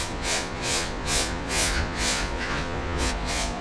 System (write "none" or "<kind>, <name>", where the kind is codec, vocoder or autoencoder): vocoder, Vocos